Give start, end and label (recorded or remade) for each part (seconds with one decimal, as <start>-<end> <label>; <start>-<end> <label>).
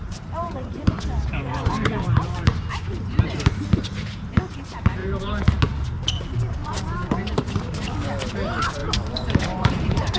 0.0-4.4 remade; 4.4-5.0 recorded; 5.0-5.6 remade; 5.6-6.6 recorded; 6.6-7.5 remade; 7.5-8.8 recorded; 8.8-10.2 remade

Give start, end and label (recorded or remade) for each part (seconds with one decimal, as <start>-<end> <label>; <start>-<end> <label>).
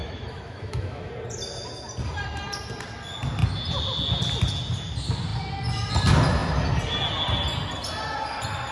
0.0-1.1 remade; 1.1-8.7 recorded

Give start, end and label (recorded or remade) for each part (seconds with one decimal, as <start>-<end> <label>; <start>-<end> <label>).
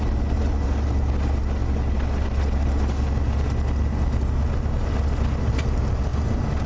0.0-6.7 recorded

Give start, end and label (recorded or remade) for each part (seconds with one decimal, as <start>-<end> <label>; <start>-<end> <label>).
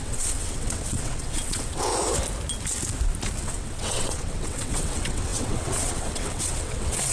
0.0-1.9 remade; 1.9-3.4 recorded; 3.4-7.1 remade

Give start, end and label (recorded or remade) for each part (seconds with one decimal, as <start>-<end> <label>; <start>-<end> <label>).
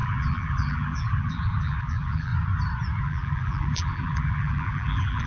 0.0-2.3 remade; 2.3-3.0 recorded; 3.0-5.3 remade